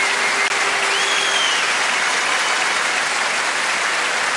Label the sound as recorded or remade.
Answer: recorded